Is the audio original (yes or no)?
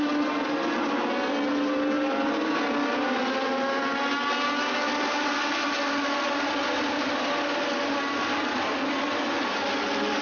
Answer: yes